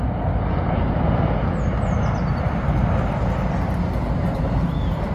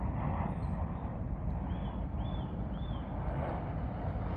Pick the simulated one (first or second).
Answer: second